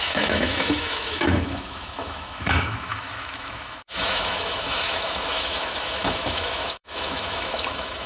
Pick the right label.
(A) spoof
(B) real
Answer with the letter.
A